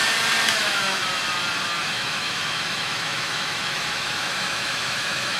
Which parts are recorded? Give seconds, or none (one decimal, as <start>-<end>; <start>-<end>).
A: 0.0-0.6; 1.0-1.8

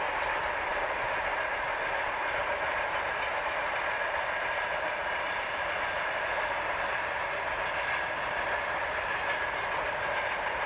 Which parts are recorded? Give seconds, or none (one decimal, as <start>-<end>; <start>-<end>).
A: 0.0-10.7

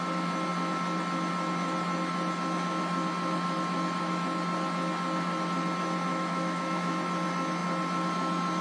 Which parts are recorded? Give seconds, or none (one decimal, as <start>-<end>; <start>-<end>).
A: 0.0-6.1; 6.9-8.6

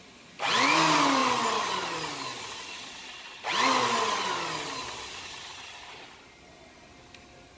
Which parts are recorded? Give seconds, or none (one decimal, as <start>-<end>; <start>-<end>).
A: 0.0-7.6

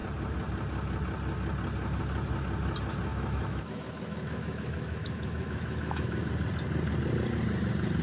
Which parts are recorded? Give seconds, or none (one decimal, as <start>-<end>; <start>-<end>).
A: 0.0-3.1; 6.3-8.0